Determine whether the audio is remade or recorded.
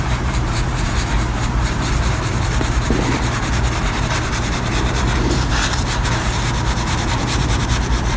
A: remade